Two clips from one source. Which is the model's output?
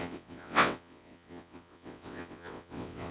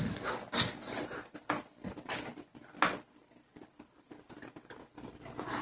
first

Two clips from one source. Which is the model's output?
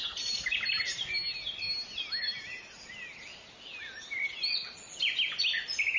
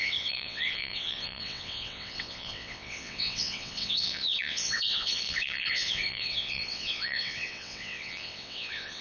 second